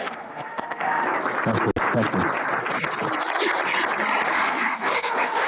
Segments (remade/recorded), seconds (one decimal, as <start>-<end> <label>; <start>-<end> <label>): 0.0-1.0 remade; 1.0-4.3 recorded; 4.3-5.5 remade